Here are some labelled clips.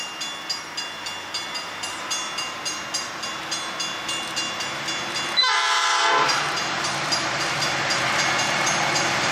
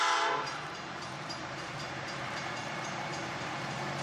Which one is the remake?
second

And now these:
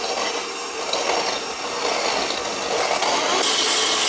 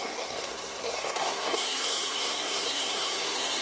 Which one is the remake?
second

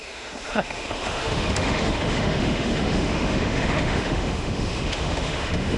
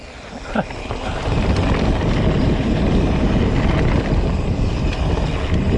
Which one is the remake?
first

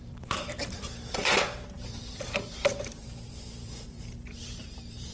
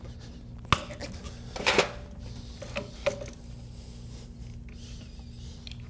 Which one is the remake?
first